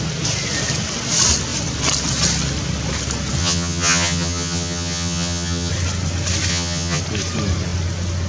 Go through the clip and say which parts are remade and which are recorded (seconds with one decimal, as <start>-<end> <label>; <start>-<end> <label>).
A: 0.0-3.4 recorded; 3.4-5.7 remade; 5.7-6.5 recorded; 6.5-7.0 remade; 7.0-8.3 recorded